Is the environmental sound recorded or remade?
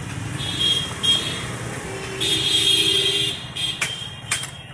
recorded